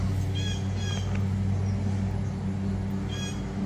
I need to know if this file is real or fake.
real